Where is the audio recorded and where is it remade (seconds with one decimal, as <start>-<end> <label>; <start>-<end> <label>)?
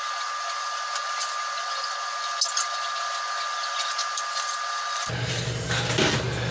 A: 0.0-6.5 recorded